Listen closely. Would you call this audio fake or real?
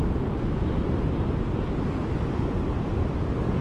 real